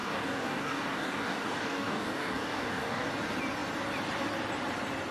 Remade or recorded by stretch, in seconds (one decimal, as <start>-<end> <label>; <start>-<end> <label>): 0.0-3.1 remade; 3.1-5.1 recorded